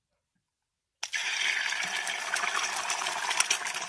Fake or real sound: real